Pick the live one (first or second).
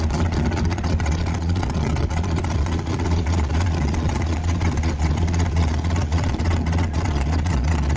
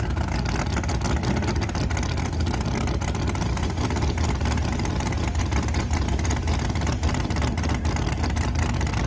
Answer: second